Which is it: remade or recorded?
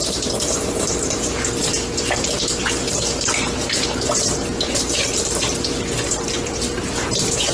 remade